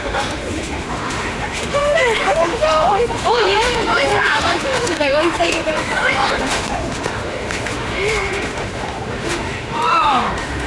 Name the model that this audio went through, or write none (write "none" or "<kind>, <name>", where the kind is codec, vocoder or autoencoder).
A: autoencoder, DAC-VAE